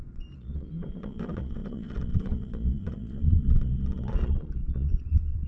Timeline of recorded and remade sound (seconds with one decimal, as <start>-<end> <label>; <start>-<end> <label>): 0.0-5.5 remade